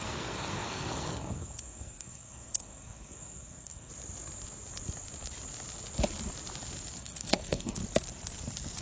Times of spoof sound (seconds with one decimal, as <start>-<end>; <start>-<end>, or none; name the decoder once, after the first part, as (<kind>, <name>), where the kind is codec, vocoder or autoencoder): 0.0-3.9 (codec, SNAC); 7.0-7.8